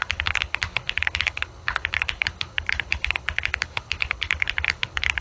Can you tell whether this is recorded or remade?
remade